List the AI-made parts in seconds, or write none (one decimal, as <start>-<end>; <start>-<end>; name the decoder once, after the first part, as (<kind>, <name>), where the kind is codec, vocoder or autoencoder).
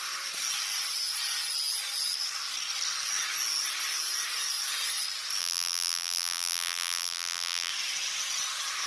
5.4-7.7 (vocoder, BigVGAN v2)